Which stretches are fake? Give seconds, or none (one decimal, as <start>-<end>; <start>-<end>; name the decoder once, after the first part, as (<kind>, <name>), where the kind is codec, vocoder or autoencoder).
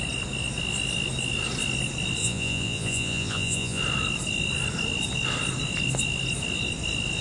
2.2-3.8 (vocoder, Vocos)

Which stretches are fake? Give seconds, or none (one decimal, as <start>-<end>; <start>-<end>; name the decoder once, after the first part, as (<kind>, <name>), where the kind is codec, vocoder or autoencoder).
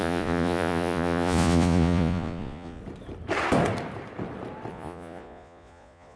0.0-2.8 (vocoder, Vocos); 4.7-6.2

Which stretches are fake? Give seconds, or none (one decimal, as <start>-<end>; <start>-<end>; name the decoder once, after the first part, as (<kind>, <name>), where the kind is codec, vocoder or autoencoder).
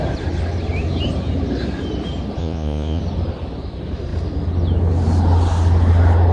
2.4-3.0 (vocoder, Vocos)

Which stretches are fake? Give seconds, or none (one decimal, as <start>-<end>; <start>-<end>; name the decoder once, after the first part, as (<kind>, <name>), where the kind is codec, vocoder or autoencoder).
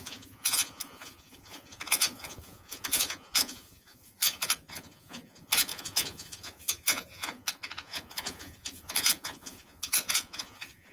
0.0-10.9 (vocoder, Vocos)